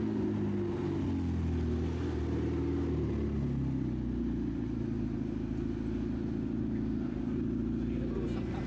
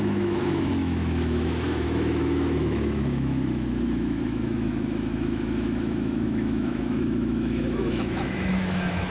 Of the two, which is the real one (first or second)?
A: first